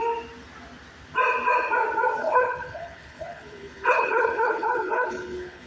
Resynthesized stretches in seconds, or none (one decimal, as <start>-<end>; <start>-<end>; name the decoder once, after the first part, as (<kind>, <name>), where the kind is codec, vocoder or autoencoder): 2.2-5.7 (codec, HILCodec)